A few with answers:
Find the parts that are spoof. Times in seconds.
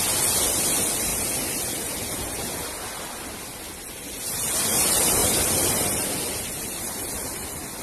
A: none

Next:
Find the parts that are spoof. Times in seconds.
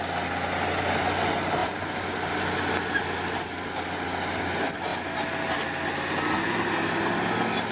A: none